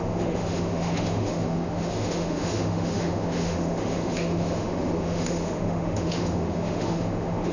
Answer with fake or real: fake